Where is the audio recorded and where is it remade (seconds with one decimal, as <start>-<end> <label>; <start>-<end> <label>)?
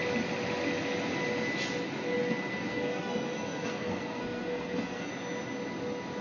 0.0-2.2 recorded; 2.2-5.1 remade; 5.1-6.2 recorded